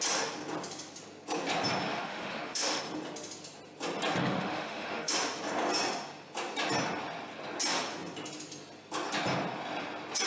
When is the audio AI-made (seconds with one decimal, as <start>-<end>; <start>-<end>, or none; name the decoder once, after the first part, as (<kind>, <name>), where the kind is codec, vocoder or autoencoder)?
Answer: 1.9-2.8 (autoencoder, DAC-VAE); 4.2-5.1